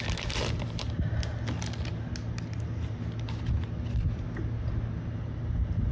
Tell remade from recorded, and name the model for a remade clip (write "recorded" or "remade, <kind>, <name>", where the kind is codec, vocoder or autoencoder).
recorded